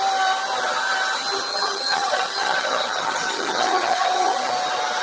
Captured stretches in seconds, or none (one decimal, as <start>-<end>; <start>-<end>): 0.0-1.5; 4.5-5.0